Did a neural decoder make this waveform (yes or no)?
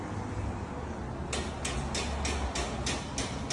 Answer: no